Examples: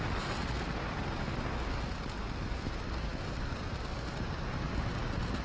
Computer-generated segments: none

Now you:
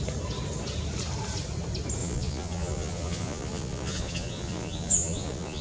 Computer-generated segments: 2.0-5.6 (vocoder, Vocos)

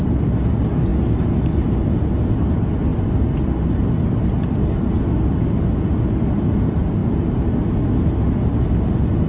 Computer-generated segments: none

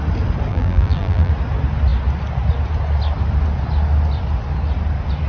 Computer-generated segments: 0.5-1.3 (vocoder, BigVGAN v2)